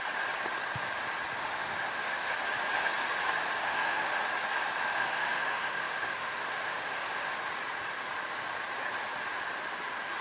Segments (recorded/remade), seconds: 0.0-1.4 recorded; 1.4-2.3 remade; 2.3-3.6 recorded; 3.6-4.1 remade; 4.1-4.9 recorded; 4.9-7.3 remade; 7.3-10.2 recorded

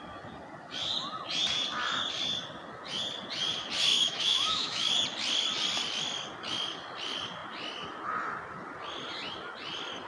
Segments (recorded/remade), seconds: 0.0-3.9 recorded; 3.9-4.9 remade; 4.9-10.1 recorded

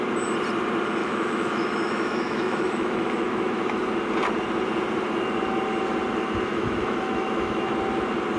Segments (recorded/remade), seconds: 0.0-1.0 recorded; 1.0-3.8 remade; 3.8-6.5 recorded; 6.5-7.7 remade; 7.7-8.4 recorded

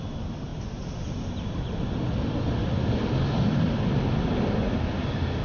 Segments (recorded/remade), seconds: 0.0-5.4 recorded

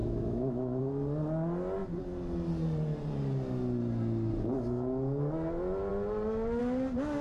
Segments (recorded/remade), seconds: 0.0-0.8 remade; 0.8-7.2 recorded

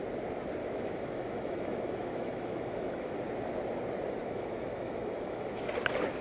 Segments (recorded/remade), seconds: 0.0-0.6 recorded; 0.6-3.2 remade; 3.2-4.2 recorded; 4.2-5.7 remade; 5.7-6.2 recorded

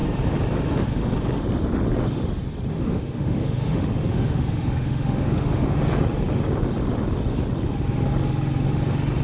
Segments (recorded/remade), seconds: 0.0-2.7 recorded; 2.7-5.8 remade; 5.8-9.2 recorded

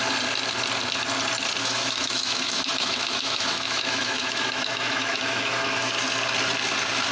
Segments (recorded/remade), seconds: 0.0-1.6 recorded; 1.6-5.9 remade; 5.9-7.1 recorded